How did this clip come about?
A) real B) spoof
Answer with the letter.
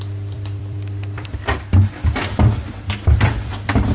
B